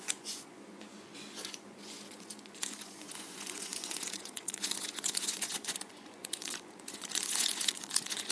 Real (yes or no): no